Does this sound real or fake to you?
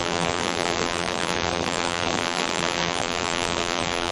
fake